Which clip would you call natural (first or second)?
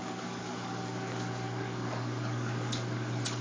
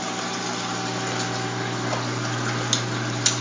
second